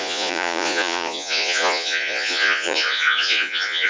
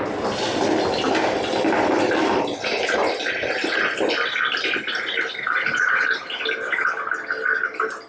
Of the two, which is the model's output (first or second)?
first